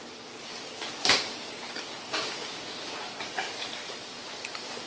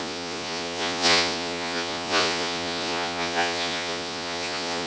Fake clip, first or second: second